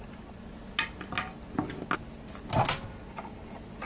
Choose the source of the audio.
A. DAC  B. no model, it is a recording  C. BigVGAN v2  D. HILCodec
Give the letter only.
B